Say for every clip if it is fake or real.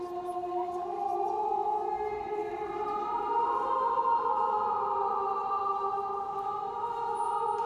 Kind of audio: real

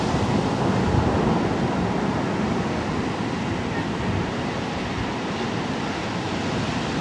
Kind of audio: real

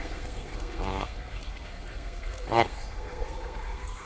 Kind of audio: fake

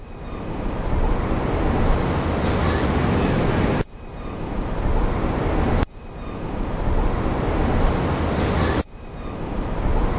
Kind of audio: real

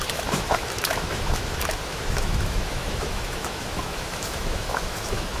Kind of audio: fake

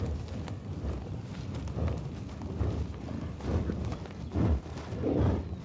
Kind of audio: real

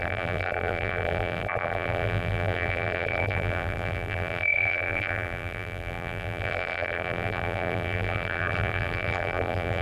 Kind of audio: fake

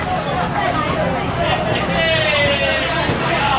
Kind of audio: real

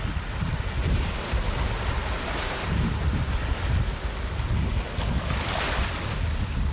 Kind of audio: real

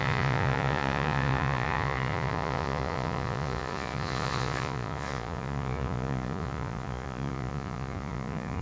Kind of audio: fake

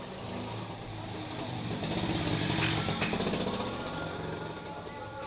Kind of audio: real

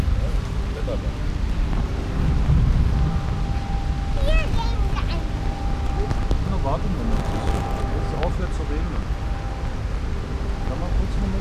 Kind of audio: real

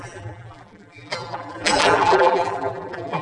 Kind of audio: fake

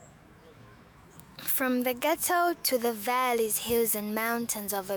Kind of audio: fake